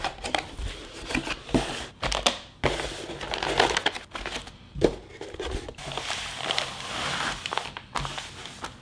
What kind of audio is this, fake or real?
real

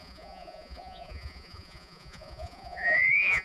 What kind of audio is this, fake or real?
fake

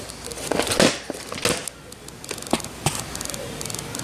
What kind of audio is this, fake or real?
real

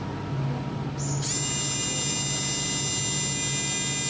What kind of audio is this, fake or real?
real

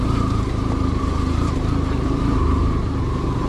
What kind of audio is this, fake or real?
fake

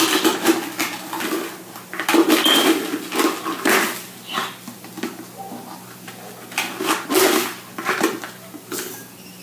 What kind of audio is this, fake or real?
real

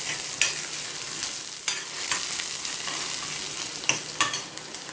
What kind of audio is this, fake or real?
real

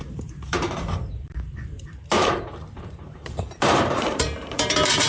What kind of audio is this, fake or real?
fake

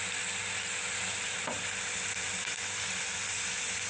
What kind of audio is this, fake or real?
real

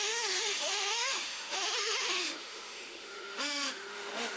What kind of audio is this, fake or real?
fake